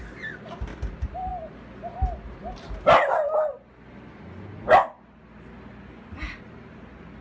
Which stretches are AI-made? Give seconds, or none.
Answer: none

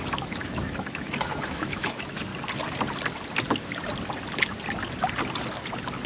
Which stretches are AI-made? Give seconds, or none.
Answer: 0.0-2.3 (autoencoder, DAC-VAE)

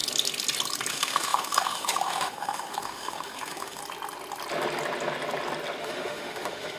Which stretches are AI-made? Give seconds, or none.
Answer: 0.9-3.8 (autoencoder, DAC-VAE); 5.8-6.8

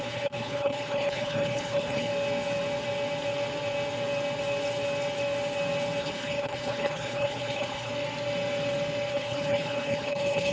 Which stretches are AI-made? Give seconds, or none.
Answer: 0.0-2.1 (codec, HILCodec); 6.0-7.9; 9.1-10.5

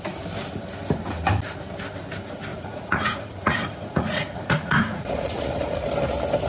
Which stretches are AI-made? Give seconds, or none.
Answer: 2.5-5.9 (vocoder, Vocos)

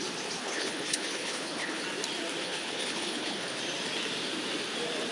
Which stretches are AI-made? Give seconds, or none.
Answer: 0.4-1.8 (codec, HILCodec); 2.4-3.6